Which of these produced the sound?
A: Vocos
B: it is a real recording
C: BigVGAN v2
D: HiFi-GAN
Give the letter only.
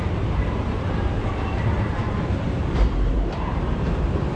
C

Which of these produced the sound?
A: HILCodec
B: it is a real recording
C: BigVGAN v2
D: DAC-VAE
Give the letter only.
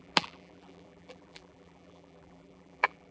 C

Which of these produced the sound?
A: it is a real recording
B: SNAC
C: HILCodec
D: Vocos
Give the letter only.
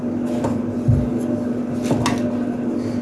A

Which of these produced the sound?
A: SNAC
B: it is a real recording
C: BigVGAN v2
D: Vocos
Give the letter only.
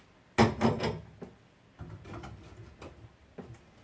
B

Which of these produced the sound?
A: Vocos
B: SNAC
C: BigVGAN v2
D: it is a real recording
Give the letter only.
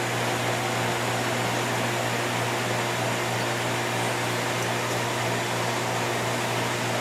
D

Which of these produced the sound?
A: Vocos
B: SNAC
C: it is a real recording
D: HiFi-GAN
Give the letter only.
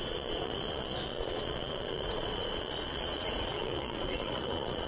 A